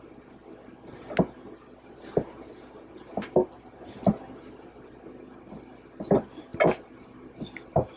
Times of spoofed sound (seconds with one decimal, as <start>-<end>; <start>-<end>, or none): none

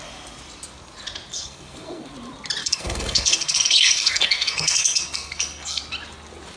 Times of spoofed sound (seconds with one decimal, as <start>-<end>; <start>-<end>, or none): 1.3-2.1; 2.6-5.8

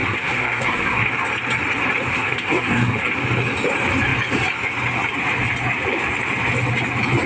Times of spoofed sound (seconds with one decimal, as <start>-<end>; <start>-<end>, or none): 0.0-1.1; 2.1-3.1

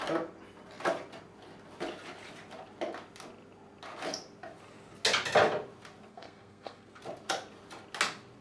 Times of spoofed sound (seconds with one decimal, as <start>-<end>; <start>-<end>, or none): 6.1-7.0